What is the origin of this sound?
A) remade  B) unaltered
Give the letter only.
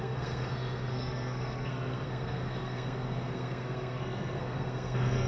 A